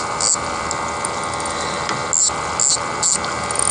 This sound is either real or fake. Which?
real